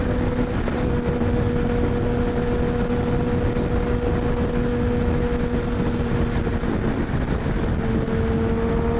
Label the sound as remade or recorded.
recorded